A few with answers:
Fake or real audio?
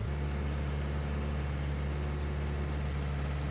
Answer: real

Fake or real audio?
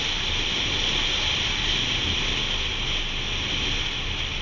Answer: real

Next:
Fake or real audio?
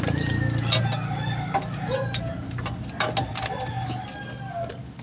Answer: real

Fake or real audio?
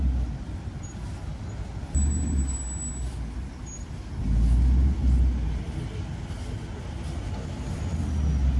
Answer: real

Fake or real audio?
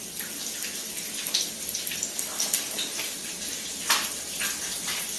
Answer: real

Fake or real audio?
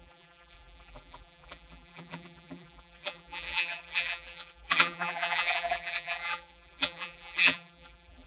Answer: fake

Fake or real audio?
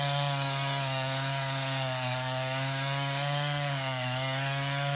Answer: fake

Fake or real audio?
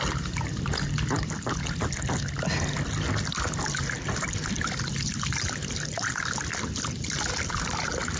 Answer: real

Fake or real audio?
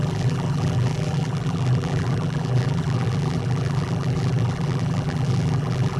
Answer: fake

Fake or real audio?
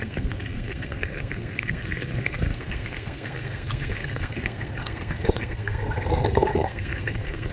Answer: fake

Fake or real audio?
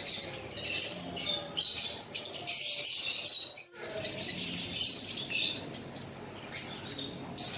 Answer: real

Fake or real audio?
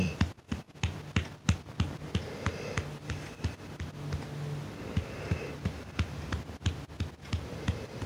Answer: real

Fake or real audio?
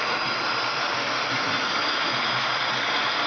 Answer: real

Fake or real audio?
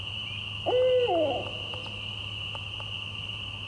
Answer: real